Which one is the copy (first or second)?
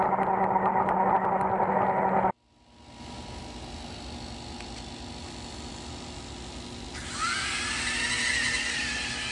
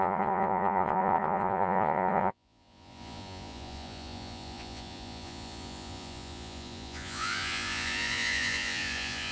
second